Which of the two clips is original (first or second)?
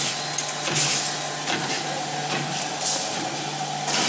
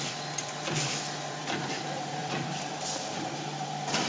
first